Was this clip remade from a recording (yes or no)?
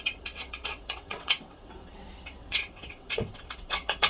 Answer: yes